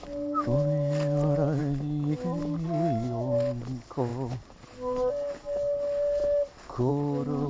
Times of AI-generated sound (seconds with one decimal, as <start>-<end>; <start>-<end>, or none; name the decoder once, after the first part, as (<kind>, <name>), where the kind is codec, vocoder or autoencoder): none